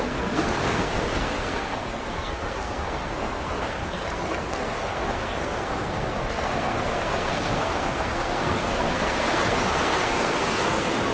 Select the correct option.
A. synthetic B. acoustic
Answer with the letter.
A